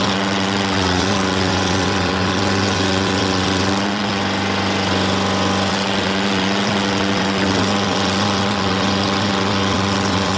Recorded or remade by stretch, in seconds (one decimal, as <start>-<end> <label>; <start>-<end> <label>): 0.0-4.2 remade; 4.2-5.7 recorded; 5.7-10.4 remade